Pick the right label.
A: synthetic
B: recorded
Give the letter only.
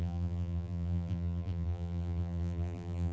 A